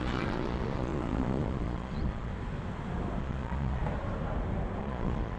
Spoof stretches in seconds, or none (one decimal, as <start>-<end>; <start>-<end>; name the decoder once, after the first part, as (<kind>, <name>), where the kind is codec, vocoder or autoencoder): 0.0-2.3 (vocoder, Vocos); 3.2-3.8; 4.8-5.4